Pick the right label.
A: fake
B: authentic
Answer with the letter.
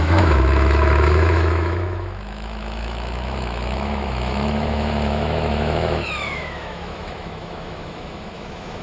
A